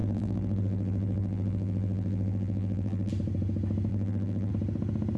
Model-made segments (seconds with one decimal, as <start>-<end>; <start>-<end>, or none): 0.0-3.1; 3.9-4.5